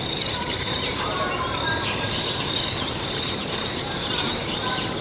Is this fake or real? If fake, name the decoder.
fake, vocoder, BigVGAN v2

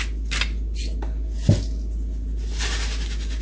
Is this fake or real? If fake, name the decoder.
real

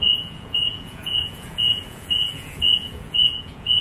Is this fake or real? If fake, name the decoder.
fake, vocoder, Vocos